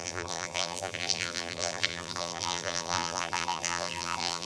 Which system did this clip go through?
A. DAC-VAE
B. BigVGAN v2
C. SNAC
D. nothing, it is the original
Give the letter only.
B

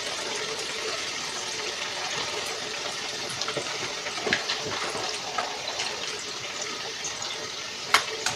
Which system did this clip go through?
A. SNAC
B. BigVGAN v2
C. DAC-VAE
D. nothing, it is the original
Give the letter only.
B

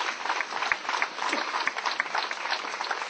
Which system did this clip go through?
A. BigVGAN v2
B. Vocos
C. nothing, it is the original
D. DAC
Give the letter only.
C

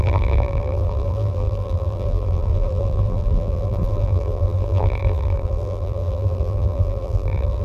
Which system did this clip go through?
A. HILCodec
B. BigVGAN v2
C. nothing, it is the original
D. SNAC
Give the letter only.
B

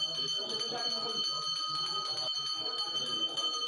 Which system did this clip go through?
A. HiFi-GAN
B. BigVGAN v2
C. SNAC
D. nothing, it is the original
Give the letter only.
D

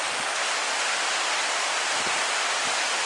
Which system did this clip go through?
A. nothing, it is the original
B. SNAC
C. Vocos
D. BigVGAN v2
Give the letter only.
A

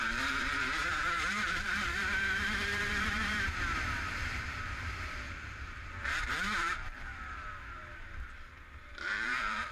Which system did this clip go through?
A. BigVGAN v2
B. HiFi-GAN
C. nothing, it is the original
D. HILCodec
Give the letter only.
A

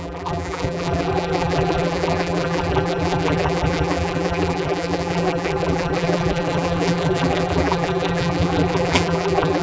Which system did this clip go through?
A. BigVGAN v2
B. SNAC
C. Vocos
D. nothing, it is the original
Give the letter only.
A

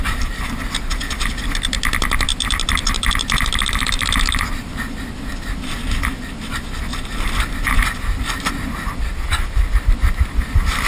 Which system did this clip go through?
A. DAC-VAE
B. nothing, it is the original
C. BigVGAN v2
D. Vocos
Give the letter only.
C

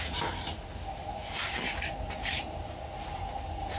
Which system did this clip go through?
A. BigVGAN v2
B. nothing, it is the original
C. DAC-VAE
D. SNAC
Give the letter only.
B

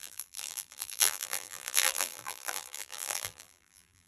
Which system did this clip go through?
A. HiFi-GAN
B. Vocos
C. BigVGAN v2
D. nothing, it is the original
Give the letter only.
C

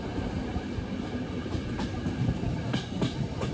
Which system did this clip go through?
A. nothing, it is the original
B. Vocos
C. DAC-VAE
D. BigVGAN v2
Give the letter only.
A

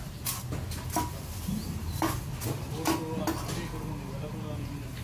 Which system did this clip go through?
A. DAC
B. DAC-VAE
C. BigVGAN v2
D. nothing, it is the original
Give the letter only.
D